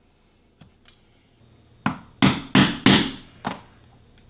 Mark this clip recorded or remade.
recorded